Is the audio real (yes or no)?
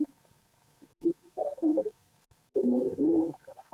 no